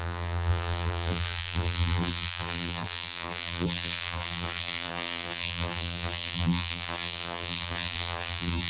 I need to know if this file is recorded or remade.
remade